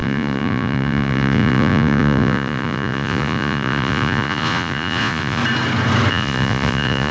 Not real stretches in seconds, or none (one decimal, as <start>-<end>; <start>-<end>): 0.0-5.4; 6.1-7.1